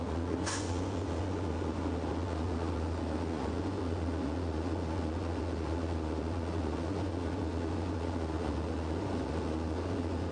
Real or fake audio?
fake